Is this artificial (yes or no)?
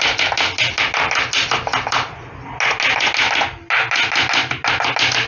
no